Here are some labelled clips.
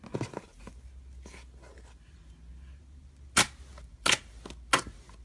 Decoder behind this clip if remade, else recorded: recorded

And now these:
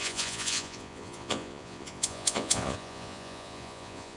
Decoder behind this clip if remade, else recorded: remade, vocoder, Vocos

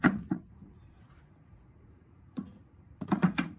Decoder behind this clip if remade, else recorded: remade, vocoder, Vocos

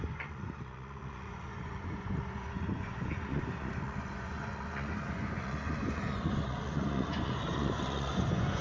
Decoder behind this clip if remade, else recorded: remade, vocoder, Vocos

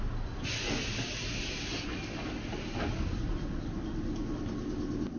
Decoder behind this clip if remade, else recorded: recorded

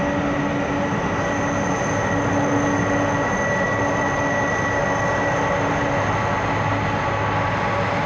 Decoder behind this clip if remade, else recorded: recorded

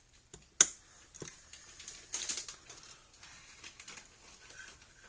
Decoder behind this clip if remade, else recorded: recorded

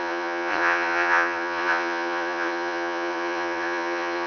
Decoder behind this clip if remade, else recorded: remade, vocoder, Vocos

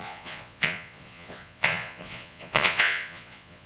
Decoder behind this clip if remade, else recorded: remade, vocoder, Vocos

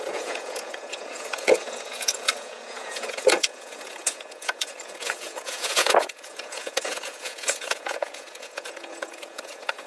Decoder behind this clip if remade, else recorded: remade, vocoder, Vocos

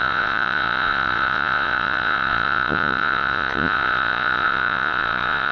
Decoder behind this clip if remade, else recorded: remade, vocoder, Vocos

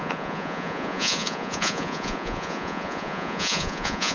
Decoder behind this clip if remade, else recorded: remade, vocoder, Vocos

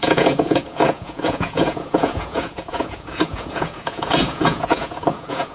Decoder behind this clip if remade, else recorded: remade, vocoder, Vocos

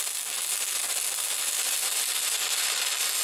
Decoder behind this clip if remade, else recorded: recorded